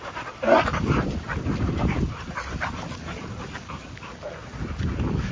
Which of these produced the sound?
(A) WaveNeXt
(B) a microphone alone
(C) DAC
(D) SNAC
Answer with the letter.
B